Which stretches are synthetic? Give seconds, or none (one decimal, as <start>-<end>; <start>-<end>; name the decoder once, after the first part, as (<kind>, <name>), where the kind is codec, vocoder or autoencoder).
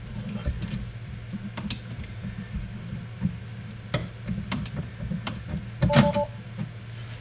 none